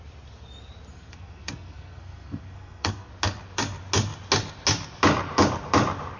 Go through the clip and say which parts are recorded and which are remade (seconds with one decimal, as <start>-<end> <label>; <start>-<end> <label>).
0.0-0.9 recorded; 0.9-3.1 remade; 3.1-6.2 recorded